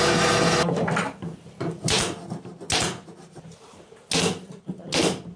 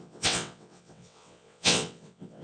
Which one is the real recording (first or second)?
first